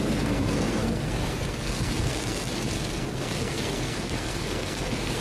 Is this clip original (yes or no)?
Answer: no